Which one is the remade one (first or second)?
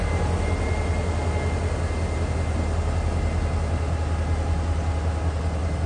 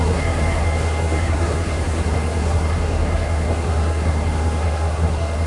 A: second